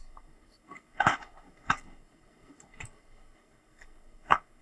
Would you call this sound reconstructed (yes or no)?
yes